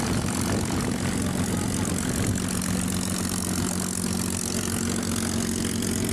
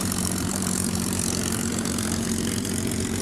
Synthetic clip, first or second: second